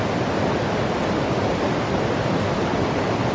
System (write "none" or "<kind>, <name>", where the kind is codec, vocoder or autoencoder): none